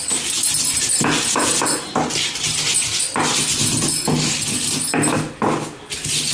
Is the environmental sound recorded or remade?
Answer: recorded